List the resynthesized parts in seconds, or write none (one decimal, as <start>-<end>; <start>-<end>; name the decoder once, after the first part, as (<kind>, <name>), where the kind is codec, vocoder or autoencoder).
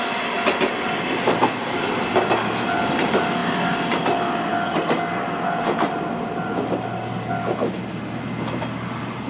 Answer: none